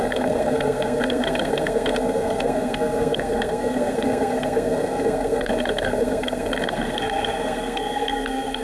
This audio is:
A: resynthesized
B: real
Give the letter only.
A